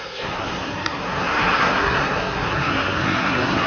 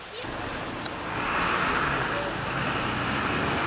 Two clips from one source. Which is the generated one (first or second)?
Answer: first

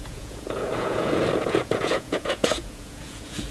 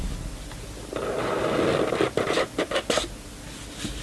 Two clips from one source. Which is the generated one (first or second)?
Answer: first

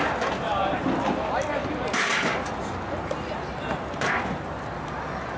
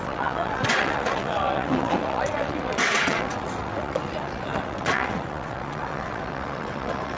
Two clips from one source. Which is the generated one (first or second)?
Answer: second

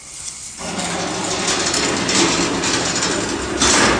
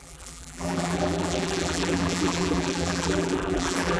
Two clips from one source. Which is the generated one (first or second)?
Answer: second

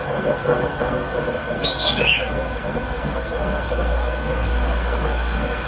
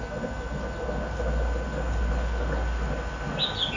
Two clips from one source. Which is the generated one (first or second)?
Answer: first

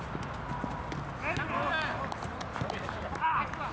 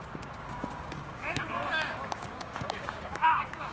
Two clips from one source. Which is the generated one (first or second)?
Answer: second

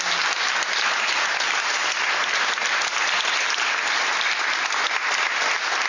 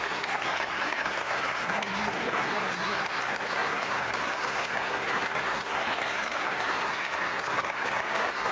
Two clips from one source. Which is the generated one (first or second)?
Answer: second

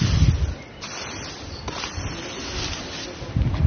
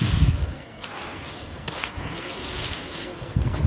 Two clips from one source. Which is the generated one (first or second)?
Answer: second